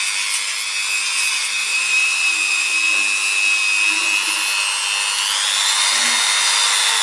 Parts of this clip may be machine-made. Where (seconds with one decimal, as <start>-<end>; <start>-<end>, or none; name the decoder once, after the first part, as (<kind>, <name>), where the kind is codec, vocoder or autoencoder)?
1.6-2.9 (vocoder, BigVGAN v2)